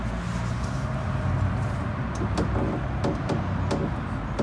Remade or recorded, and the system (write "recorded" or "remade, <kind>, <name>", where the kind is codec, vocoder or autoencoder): recorded